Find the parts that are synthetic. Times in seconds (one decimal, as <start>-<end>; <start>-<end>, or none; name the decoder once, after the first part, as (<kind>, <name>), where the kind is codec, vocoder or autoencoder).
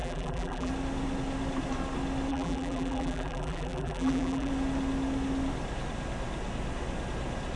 0.0-0.7 (vocoder, BigVGAN v2); 2.3-4.5